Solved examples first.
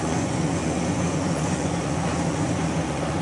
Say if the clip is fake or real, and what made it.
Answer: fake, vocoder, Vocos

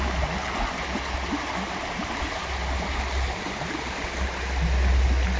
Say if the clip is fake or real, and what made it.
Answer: real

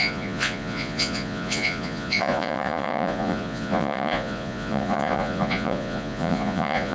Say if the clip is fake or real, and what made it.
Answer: fake, vocoder, Vocos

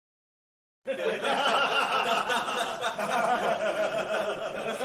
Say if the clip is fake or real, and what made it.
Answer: real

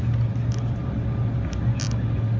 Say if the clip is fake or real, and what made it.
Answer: real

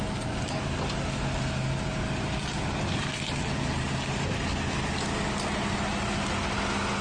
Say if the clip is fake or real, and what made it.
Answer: real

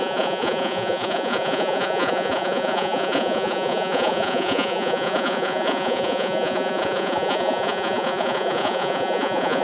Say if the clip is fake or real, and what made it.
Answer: fake, vocoder, Vocos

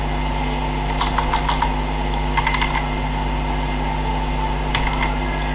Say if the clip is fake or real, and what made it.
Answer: real